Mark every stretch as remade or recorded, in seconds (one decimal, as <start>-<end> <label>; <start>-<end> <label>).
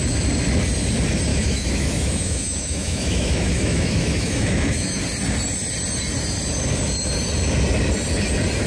0.0-1.3 recorded; 1.3-5.0 remade; 5.0-8.7 recorded